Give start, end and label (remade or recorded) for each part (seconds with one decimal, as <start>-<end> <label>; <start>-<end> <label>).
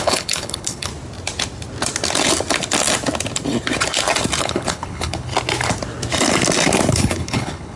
0.0-0.9 remade; 0.9-4.4 recorded; 4.4-5.3 remade; 5.3-6.9 recorded; 6.9-7.8 remade